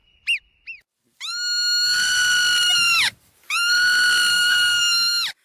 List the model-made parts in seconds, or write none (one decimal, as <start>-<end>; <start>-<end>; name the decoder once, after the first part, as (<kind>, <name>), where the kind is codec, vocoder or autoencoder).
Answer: 4.3-4.8 (codec, SNAC)